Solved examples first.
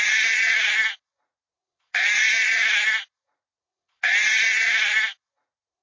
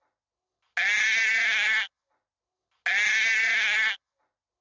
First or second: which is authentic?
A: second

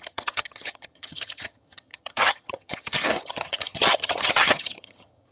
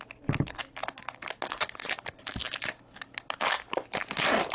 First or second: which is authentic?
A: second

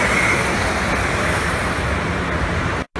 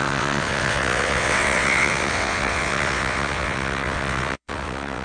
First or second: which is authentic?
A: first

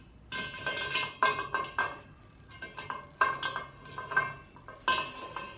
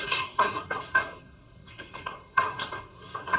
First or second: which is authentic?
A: first